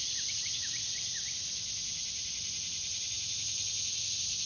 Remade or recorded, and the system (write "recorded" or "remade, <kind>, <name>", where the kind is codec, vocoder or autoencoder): remade, vocoder, BigVGAN v2